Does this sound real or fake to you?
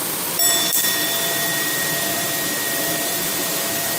fake